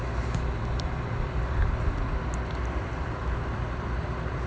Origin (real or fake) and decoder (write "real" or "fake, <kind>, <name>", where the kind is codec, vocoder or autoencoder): fake, vocoder, BigVGAN v2